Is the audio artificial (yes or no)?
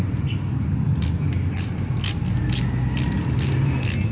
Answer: no